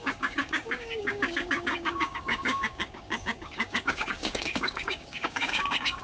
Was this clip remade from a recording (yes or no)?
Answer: yes